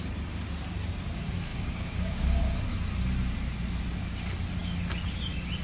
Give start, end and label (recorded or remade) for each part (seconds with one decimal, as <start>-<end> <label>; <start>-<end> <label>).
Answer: 0.0-1.5 recorded; 1.5-2.4 remade; 2.4-5.6 recorded